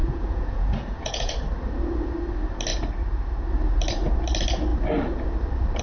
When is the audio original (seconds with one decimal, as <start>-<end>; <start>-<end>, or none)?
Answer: 1.3-5.8